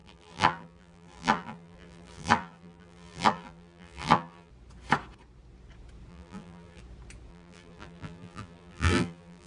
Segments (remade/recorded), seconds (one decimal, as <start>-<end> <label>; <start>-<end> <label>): 0.0-4.5 remade; 4.5-6.1 recorded; 6.1-6.8 remade; 6.8-7.3 recorded; 7.3-9.5 remade